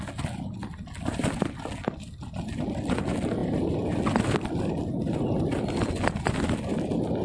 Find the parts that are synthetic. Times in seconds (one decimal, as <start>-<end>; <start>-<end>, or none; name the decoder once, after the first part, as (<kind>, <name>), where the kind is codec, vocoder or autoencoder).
none

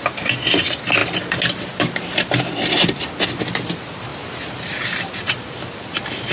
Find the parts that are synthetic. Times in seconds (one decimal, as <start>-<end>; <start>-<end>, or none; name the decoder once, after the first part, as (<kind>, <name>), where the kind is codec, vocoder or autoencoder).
4.1-4.8 (vocoder, BigVGAN v2)

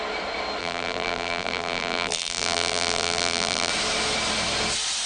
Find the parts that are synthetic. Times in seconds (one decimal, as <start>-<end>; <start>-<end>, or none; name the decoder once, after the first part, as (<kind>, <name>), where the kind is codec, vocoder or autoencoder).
0.6-3.7 (vocoder, BigVGAN v2)

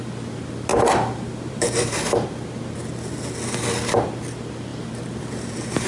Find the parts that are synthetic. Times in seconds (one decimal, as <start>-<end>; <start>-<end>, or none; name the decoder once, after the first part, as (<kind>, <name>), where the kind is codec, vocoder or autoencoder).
0.7-2.1 (vocoder, BigVGAN v2); 4.7-5.9

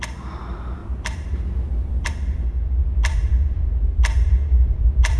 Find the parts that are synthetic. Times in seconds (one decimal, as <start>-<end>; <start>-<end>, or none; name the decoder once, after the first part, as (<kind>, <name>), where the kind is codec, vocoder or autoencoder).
0.8-2.1 (vocoder, BigVGAN v2); 2.8-5.2

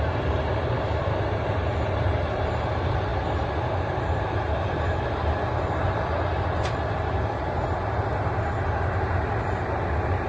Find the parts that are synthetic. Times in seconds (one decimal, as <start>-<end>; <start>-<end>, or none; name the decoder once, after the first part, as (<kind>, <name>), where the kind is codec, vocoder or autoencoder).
0.0-10.3 (vocoder, BigVGAN v2)

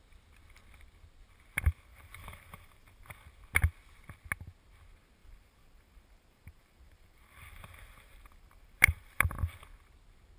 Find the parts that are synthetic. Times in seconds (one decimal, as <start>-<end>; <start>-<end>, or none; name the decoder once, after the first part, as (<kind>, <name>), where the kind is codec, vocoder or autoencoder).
1.9-3.2 (vocoder, BigVGAN v2); 5.2-9.6